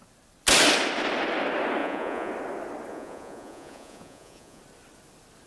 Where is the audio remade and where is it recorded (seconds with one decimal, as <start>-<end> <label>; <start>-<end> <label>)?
0.0-1.8 recorded; 1.8-2.3 remade; 2.3-2.9 recorded; 2.9-4.6 remade; 4.6-5.5 recorded